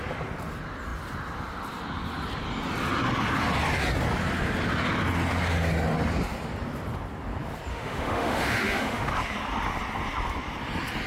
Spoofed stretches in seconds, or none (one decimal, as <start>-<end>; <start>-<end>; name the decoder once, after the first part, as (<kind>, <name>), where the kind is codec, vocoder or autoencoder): 7.7-9.1 (autoencoder, DAC-VAE)